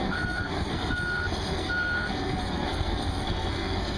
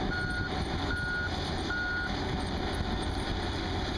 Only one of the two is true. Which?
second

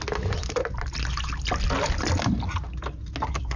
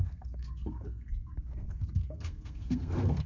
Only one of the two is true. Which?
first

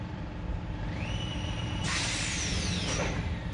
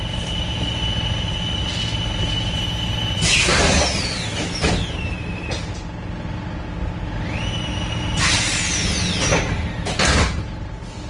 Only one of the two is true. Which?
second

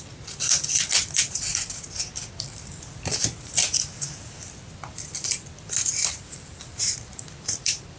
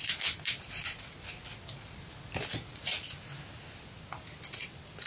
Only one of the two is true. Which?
second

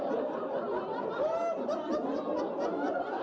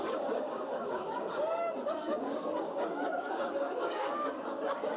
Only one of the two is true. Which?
first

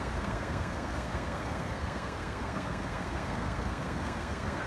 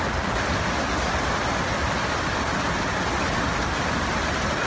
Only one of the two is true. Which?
second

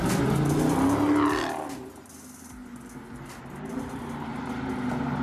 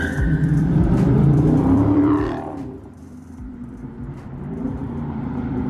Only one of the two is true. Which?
first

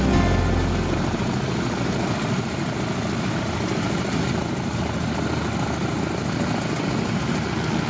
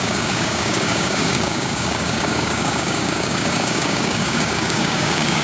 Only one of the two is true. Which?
first